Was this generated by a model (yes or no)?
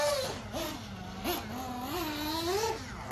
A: no